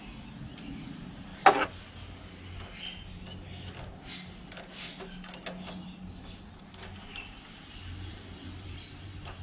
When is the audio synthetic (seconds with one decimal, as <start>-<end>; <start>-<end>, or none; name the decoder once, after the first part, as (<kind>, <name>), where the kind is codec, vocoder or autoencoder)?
0.0-1.3 (vocoder, BigVGAN v2); 6.6-9.4